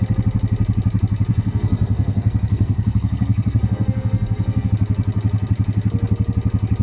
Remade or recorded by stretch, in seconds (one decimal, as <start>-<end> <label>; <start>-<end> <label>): 0.0-1.3 recorded; 1.3-4.7 remade; 4.7-6.8 recorded